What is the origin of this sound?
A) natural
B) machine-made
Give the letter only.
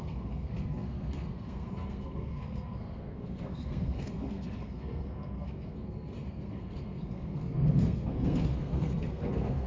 B